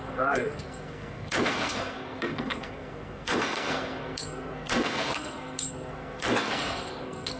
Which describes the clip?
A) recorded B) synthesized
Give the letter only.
B